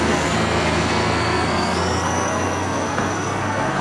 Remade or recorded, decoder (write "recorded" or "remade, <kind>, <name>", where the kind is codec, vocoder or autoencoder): remade, codec, SNAC